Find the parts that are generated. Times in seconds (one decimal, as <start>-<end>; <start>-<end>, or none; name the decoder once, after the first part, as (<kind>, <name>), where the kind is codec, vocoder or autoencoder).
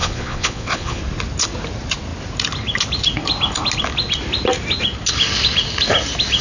0.0-1.0 (vocoder, Vocos)